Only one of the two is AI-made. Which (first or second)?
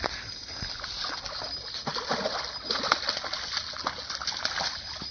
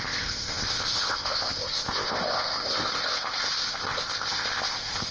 second